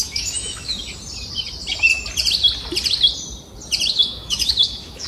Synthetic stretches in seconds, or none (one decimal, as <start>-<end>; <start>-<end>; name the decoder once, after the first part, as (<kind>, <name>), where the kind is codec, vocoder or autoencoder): 0.0-0.8 (autoencoder, DAC-VAE); 3.9-5.1